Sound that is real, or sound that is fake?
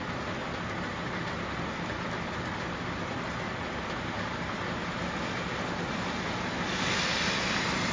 real